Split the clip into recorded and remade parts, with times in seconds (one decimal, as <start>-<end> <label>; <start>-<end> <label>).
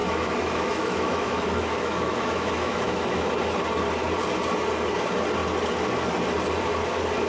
0.0-3.3 remade; 3.3-7.3 recorded